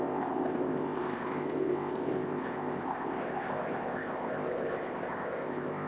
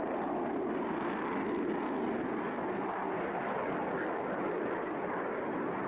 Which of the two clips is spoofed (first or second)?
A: first